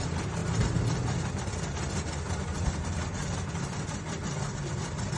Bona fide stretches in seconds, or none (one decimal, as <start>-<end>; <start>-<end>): 0.0-5.2